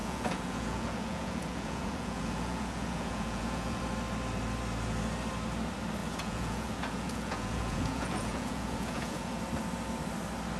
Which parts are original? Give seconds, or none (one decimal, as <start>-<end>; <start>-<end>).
3.8-6.0; 9.4-10.6